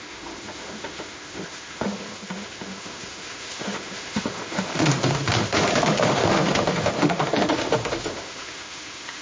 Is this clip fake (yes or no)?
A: yes